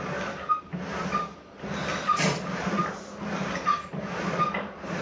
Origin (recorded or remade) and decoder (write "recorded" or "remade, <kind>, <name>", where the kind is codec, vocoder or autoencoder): recorded